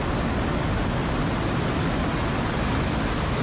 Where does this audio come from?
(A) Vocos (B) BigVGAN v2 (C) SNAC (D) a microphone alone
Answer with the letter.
D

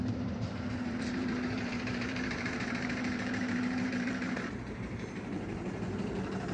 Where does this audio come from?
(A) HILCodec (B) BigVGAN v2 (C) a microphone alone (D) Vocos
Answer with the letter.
B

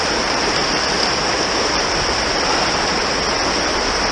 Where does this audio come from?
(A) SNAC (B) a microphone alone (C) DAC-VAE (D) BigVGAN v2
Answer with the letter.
D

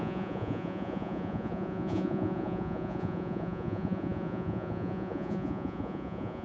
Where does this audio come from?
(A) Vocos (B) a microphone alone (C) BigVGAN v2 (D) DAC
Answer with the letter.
A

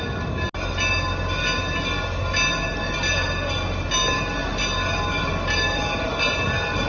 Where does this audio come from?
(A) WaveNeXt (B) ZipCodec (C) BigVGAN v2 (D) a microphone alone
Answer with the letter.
D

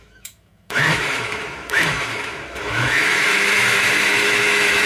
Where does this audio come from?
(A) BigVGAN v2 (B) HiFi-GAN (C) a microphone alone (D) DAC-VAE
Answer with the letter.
D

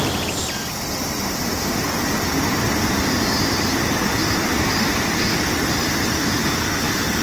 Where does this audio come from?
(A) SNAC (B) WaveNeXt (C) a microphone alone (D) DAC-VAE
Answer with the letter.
C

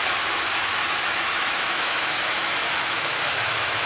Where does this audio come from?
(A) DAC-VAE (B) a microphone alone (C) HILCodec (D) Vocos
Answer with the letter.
A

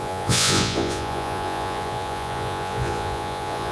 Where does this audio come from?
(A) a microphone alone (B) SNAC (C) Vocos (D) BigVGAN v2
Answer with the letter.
C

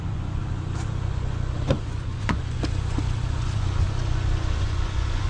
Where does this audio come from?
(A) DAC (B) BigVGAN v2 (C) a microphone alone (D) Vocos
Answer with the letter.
D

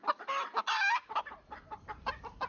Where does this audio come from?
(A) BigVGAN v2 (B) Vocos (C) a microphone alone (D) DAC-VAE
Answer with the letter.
C